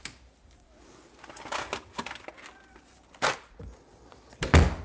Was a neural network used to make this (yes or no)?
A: no